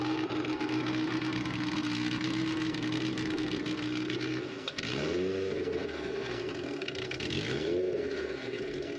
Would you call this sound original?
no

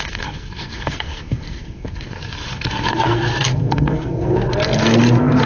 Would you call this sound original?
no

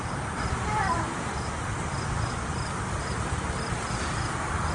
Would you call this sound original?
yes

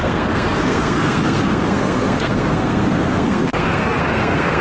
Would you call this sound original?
no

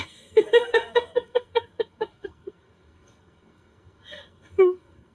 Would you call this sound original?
no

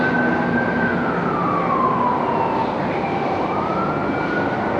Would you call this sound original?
yes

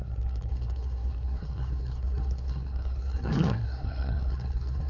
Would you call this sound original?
no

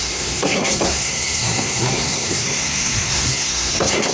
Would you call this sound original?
no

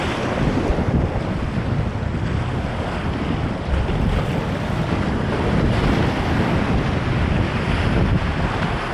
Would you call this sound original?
yes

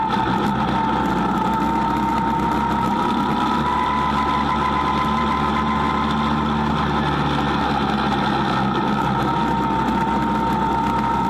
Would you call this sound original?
yes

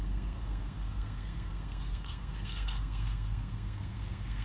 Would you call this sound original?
no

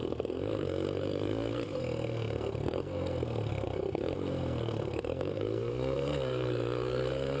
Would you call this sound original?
no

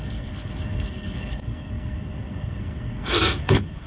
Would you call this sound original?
no